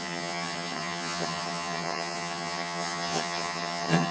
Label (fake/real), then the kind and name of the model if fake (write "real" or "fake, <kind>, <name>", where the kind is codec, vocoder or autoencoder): fake, vocoder, HiFi-GAN